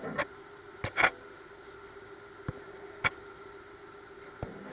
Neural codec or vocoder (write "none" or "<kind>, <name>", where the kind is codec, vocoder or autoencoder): none